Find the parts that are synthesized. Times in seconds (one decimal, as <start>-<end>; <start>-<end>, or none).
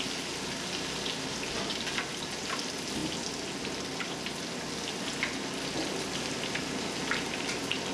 none